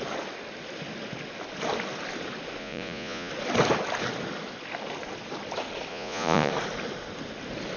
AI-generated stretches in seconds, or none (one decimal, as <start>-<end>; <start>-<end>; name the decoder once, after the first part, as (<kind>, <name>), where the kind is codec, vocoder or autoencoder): 2.6-3.3 (vocoder, Vocos); 5.9-6.5